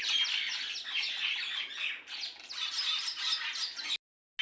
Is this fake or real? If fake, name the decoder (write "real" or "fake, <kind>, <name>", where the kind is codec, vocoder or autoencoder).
real